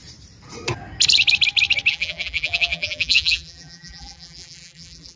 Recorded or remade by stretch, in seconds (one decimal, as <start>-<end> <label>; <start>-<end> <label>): 0.0-1.9 recorded; 1.9-5.2 remade